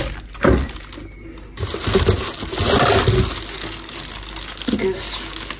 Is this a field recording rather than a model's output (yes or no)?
yes